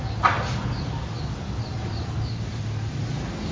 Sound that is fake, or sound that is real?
real